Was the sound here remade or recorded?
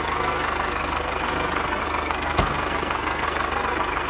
remade